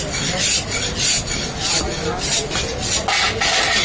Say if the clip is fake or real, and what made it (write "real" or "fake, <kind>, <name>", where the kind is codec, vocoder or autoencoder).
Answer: real